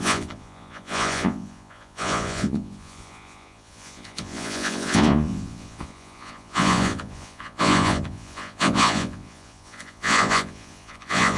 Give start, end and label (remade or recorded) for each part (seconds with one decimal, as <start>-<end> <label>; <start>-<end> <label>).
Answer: 0.0-11.4 remade